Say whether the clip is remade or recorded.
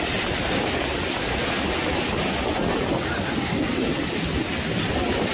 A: recorded